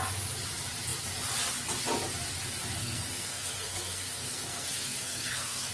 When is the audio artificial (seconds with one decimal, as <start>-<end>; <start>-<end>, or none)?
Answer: 2.8-5.7